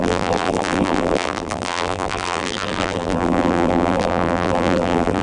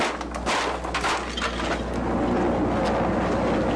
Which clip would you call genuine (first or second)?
second